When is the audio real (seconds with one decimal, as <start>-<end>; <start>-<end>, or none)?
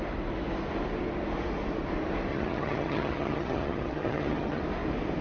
0.0-2.3; 4.6-5.2